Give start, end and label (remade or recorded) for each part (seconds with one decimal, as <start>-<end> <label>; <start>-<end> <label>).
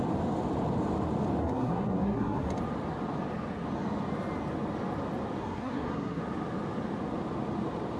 0.0-1.4 recorded; 1.4-2.5 remade; 2.5-5.4 recorded; 5.4-6.2 remade; 6.2-8.0 recorded